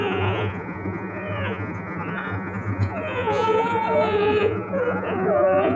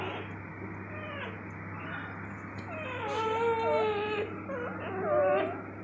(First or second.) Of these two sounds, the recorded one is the second